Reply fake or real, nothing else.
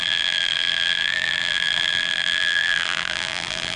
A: fake